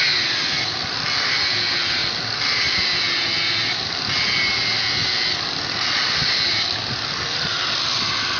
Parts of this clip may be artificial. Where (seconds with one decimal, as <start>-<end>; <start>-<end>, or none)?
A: none